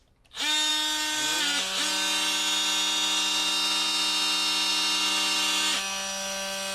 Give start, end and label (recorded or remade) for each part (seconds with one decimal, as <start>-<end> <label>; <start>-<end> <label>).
0.0-6.7 recorded